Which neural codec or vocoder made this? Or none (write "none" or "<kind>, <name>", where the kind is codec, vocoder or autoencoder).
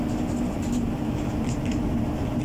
vocoder, BigVGAN v2